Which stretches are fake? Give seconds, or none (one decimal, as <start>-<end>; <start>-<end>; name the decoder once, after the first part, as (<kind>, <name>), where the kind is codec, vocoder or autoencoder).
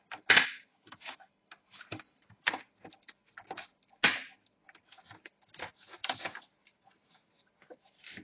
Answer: 0.7-1.3 (autoencoder, DAC-VAE)